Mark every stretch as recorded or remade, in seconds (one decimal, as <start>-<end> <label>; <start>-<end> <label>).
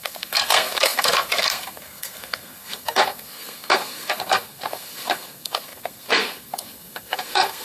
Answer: 0.0-7.6 remade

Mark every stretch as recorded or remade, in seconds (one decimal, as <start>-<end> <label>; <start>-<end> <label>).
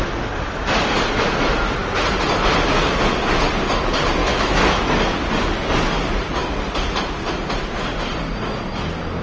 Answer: 0.0-4.2 recorded; 4.2-5.0 remade; 5.0-9.2 recorded